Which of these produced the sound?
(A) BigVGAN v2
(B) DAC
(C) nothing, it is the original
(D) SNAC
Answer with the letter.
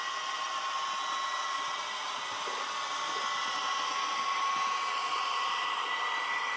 C